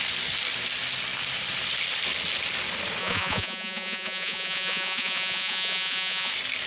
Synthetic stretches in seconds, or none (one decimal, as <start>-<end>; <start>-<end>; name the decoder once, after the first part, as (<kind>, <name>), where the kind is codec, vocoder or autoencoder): 3.0-6.3 (vocoder, Vocos)